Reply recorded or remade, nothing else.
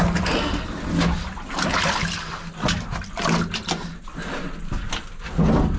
recorded